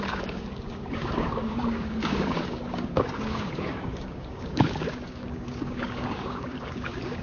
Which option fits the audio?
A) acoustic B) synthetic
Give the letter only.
B